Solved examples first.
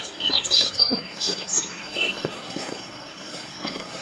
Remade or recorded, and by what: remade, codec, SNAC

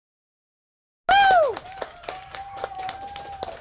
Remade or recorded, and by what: recorded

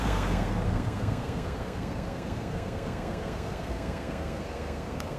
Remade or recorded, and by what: remade, codec, SNAC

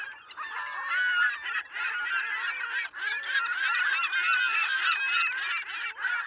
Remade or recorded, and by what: recorded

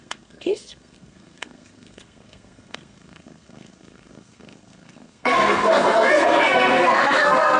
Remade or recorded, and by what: remade, codec, SNAC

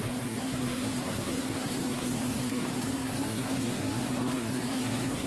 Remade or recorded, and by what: remade, codec, SNAC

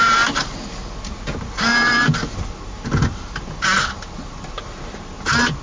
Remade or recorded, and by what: recorded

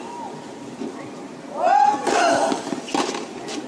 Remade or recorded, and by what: recorded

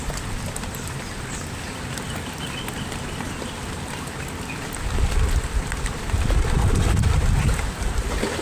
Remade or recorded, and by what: recorded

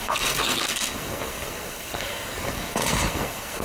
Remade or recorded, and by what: remade, codec, SNAC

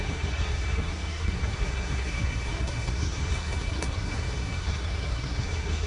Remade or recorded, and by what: remade, codec, SNAC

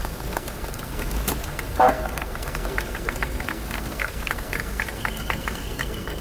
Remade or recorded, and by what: remade, codec, SNAC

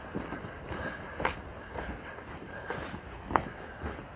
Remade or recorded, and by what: recorded